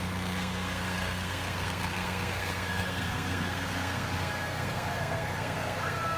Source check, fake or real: fake